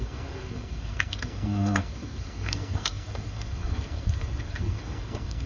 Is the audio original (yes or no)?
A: no